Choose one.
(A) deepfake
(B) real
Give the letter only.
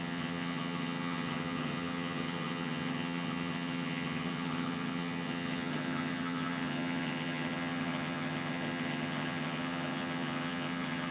A